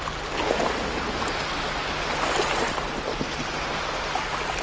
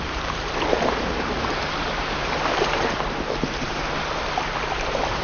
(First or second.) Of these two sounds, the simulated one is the second